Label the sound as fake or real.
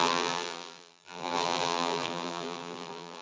fake